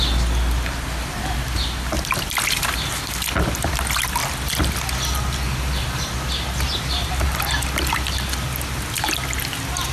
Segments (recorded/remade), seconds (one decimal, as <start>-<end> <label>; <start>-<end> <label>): 0.0-9.9 recorded